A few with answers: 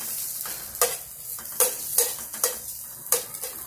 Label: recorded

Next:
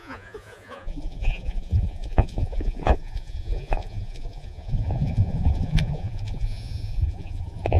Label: remade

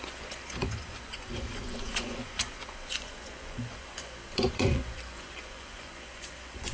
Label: remade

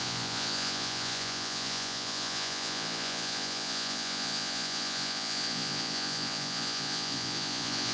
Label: remade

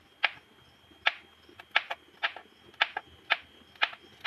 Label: recorded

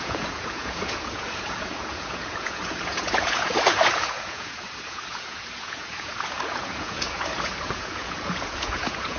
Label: remade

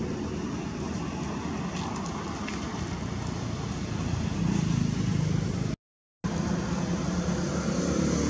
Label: recorded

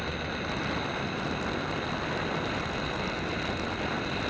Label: recorded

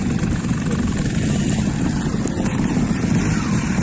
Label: recorded